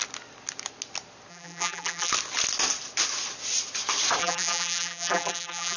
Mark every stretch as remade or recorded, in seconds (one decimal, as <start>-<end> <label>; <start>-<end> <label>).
0.0-1.3 recorded; 1.3-2.1 remade; 2.1-4.2 recorded; 4.2-5.8 remade